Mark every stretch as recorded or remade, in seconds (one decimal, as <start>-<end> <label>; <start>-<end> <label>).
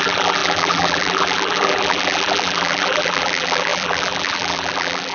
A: 0.0-5.1 remade